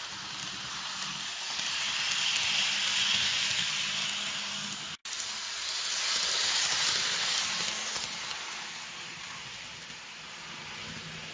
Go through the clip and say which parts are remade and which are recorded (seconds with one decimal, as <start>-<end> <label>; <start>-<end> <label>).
0.0-2.9 recorded; 2.9-3.5 remade; 3.5-11.3 recorded